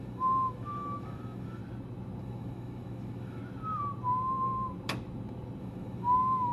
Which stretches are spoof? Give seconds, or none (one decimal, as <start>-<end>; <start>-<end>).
0.0-1.6; 2.2-3.4; 5.6-6.5